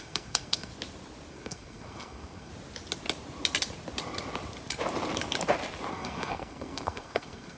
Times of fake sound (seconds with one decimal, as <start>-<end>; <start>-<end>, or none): 0.0-0.7; 1.3-2.5; 5.9-7.6